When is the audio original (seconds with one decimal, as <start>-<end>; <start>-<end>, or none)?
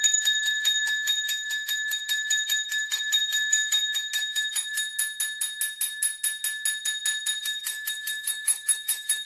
4.9-7.4